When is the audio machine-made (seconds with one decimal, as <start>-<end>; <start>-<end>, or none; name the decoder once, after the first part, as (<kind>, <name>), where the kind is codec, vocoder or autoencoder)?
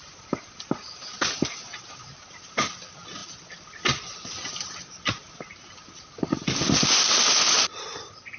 0.0-2.7 (vocoder, BigVGAN v2)